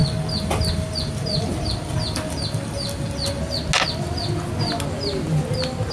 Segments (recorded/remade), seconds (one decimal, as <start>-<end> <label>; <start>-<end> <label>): 0.0-3.4 remade; 3.4-5.9 recorded